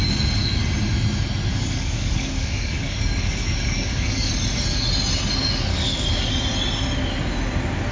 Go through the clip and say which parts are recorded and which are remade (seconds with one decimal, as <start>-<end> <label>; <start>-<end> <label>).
0.0-1.5 recorded; 1.5-4.3 remade; 4.3-5.7 recorded; 5.7-6.4 remade; 6.4-7.9 recorded